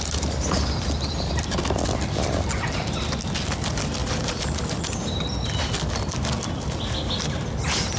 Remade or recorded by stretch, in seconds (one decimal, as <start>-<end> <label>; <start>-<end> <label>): 0.0-4.0 recorded; 4.0-5.3 remade; 5.3-8.0 recorded